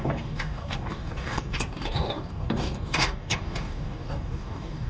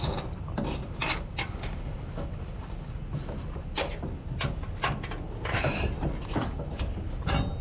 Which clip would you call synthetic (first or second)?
first